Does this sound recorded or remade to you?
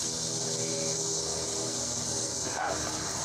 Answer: remade